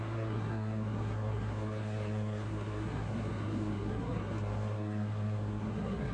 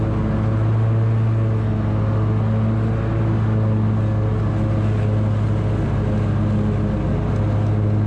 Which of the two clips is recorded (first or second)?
second